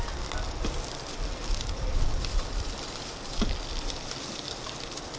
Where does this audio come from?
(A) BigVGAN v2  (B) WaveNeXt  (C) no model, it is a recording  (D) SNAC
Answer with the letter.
A